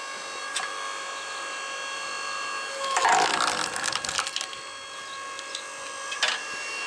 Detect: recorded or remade recorded